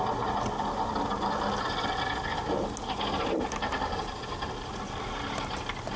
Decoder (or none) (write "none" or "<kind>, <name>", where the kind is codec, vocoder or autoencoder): none